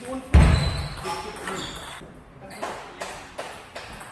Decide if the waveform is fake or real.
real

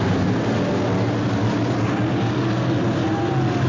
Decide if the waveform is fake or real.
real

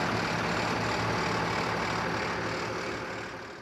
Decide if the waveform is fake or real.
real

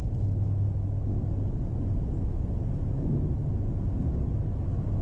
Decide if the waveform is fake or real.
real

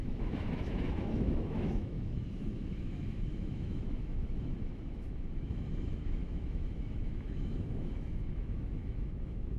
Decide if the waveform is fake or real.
fake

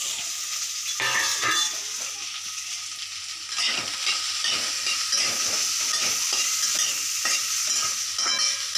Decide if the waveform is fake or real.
real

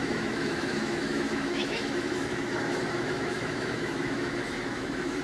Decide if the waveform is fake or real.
fake